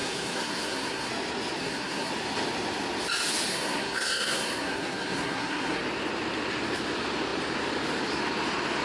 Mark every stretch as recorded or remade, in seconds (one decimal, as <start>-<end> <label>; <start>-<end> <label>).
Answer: 0.0-1.1 remade; 1.1-1.6 recorded; 1.6-2.1 remade; 2.1-3.5 recorded; 3.5-5.8 remade; 5.8-8.8 recorded